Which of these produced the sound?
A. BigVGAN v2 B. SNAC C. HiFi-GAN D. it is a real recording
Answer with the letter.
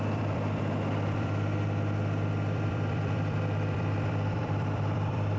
A